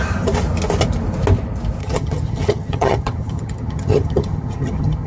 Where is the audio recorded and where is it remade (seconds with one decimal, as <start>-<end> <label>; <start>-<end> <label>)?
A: 0.0-1.8 recorded; 1.8-5.1 remade